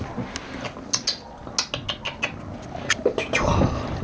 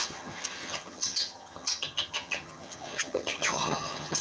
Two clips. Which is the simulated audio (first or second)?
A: second